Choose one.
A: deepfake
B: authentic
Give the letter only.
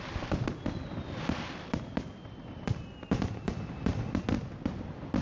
A